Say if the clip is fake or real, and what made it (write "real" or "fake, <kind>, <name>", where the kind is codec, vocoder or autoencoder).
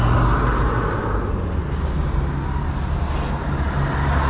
real